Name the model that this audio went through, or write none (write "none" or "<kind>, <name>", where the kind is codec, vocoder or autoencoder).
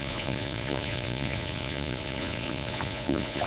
vocoder, Vocos